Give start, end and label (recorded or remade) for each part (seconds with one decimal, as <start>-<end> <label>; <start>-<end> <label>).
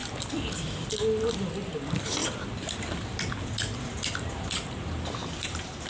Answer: 0.0-0.9 recorded; 0.9-2.2 remade; 2.2-3.4 recorded; 3.4-5.9 remade